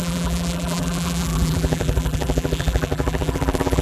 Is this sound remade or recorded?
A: remade